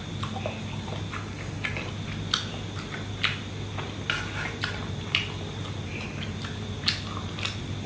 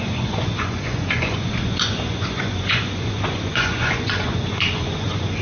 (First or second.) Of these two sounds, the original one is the first